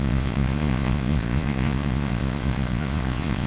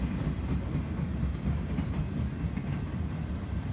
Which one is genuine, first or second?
second